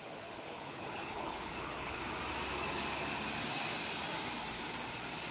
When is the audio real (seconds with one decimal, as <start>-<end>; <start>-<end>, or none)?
2.0-5.3